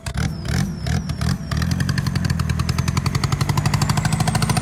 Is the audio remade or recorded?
recorded